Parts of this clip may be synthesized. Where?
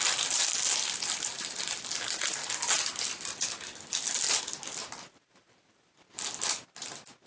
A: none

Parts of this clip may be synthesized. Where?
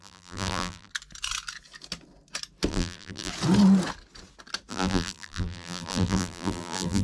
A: 0.0-0.9 (vocoder, BigVGAN v2); 2.7-3.3; 4.7-7.0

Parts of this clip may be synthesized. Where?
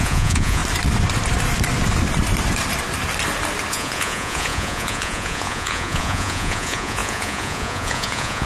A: 0.0-0.6 (vocoder, Vocos); 3.7-8.5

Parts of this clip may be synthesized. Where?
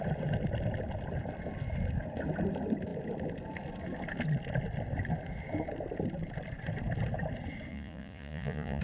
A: 7.7-8.8 (vocoder, Vocos)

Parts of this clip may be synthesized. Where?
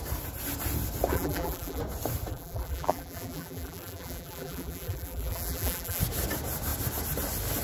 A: 1.1-1.8 (vocoder, BigVGAN v2); 2.3-6.0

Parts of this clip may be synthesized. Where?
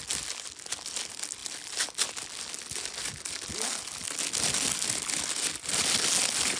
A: none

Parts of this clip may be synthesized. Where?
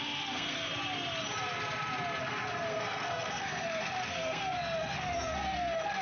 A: 0.0-0.7 (codec, SNAC); 2.2-6.0